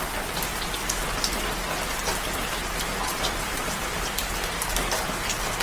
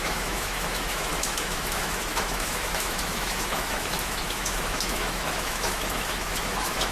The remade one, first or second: second